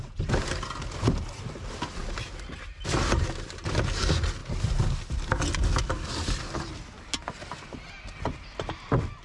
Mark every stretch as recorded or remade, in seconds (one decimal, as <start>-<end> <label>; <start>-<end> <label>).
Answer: 0.0-9.2 recorded